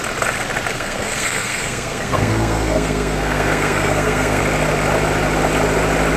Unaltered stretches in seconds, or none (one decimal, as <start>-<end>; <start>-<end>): 0.0-0.7; 4.4-6.2